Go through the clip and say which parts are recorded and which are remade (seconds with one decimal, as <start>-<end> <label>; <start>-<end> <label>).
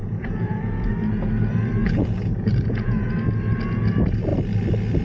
0.0-0.9 remade; 0.9-1.8 recorded; 1.8-3.1 remade; 3.1-5.0 recorded